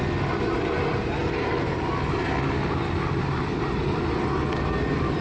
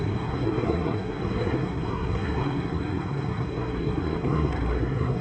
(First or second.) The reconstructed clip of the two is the second